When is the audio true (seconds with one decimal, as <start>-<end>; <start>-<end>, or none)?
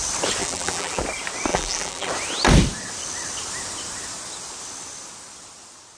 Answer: 0.0-0.4; 1.0-1.5; 2.1-6.0